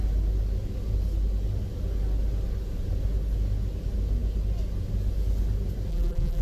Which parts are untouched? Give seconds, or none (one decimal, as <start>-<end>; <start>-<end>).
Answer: 0.0-5.9